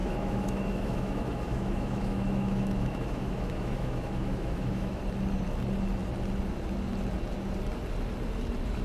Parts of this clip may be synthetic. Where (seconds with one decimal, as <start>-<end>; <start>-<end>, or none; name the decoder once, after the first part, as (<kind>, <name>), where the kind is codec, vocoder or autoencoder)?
0.0-5.0 (autoencoder, DAC-VAE)